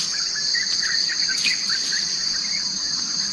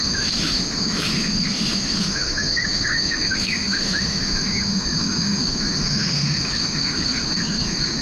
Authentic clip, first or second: first